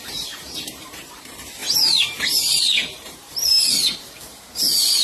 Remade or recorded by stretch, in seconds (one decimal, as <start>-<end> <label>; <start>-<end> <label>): 0.0-5.0 remade